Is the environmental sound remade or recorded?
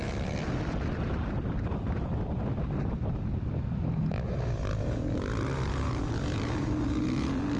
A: recorded